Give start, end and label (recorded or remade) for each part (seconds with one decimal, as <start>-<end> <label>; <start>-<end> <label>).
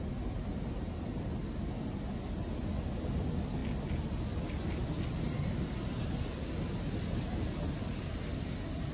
0.0-8.9 recorded